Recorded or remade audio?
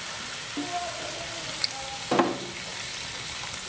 recorded